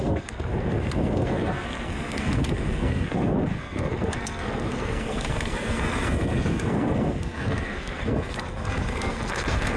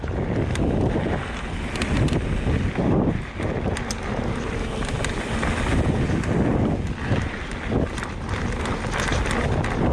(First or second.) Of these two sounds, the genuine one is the second